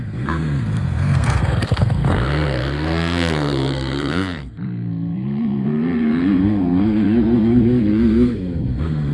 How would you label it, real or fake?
fake